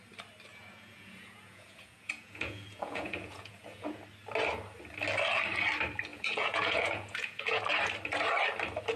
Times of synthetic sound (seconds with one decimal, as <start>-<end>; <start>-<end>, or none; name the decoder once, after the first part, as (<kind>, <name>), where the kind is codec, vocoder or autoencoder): 0.5-4.0 (vocoder, Vocos); 6.1-7.6